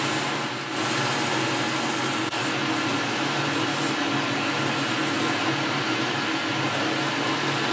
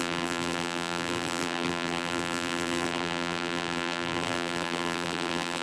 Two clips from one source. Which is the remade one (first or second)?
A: second